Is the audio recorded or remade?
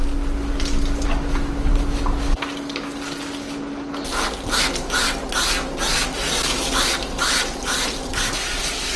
recorded